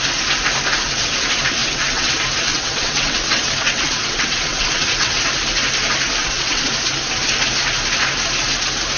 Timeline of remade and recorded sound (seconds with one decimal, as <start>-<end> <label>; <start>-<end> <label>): 0.0-1.6 recorded; 1.6-2.1 remade; 2.1-2.5 recorded; 2.5-5.2 remade; 5.2-6.2 recorded; 6.2-6.7 remade; 6.7-9.0 recorded